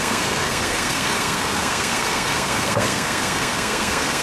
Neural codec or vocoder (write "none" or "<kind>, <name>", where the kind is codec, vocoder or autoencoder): codec, SNAC